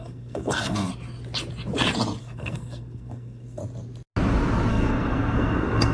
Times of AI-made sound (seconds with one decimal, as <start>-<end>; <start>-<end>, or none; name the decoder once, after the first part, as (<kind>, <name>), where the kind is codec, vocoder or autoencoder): 0.0-0.9 (codec, SNAC); 2.2-3.6; 4.7-5.9